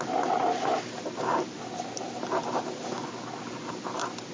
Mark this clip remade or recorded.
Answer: recorded